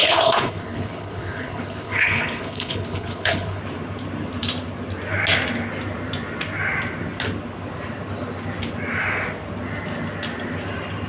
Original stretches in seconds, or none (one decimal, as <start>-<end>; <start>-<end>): 3.6-11.1